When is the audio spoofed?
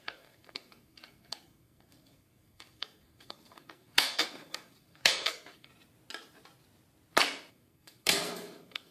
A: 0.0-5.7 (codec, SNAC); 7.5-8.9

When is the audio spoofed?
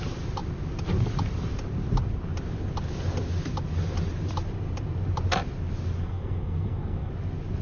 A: 6.0-7.1 (codec, SNAC)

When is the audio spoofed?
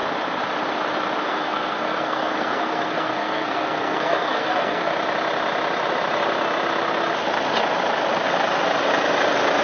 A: 1.2-4.9 (codec, SNAC)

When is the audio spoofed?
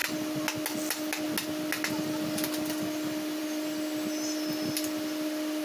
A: none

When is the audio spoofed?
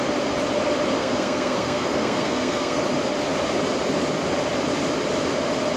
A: 1.0-2.8 (codec, SNAC)